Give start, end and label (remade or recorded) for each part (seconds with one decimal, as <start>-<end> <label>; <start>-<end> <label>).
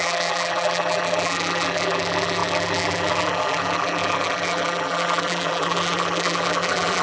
0.0-7.0 remade